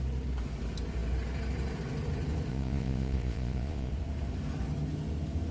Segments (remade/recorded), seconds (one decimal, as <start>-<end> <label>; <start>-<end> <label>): 0.0-2.5 recorded; 2.5-3.9 remade; 3.9-5.5 recorded